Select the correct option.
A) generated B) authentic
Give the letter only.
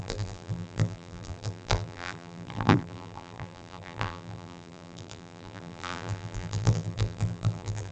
A